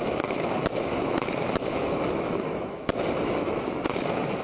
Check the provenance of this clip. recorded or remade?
remade